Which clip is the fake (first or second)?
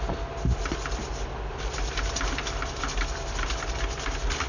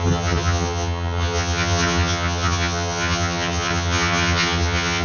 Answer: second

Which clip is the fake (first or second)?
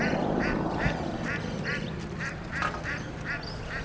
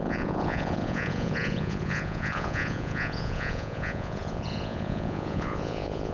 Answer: second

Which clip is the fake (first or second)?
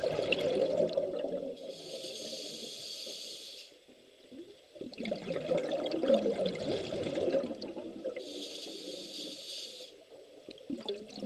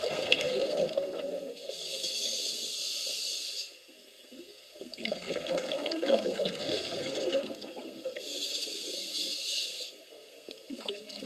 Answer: second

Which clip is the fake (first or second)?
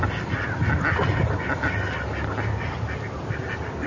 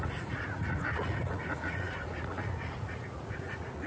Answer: second